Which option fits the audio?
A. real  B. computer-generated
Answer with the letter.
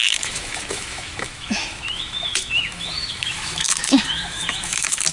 B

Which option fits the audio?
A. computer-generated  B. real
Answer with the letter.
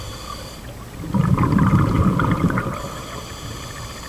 B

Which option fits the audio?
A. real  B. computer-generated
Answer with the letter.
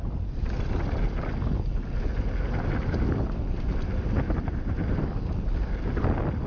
A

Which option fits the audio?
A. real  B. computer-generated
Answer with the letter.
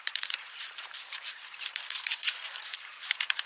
B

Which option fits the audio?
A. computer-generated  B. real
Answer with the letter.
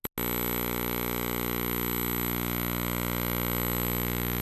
B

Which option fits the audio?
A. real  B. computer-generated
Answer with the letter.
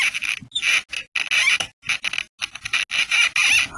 A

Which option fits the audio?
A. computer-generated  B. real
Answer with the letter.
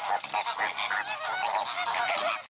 B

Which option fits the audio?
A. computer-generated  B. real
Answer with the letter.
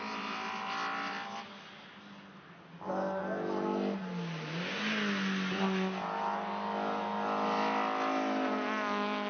B